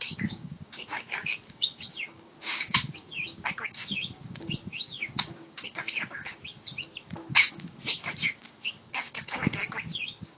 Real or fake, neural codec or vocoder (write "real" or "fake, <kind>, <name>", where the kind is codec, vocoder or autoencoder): fake, codec, DAC